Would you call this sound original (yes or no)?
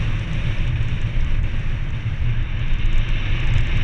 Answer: yes